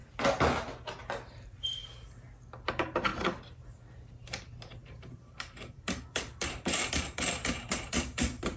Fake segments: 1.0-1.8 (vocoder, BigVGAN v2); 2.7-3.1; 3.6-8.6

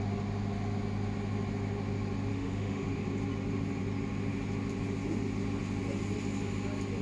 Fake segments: 2.3-3.0 (autoencoder, DAC-VAE)

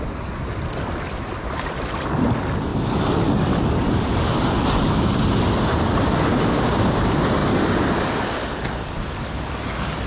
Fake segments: 6.3-7.0 (codec, DAC)

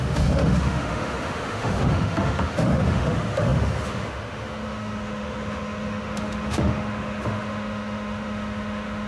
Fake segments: 0.0-9.1 (autoencoder, DAC-VAE)